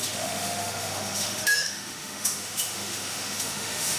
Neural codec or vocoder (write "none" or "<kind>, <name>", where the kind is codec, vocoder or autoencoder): autoencoder, DAC-VAE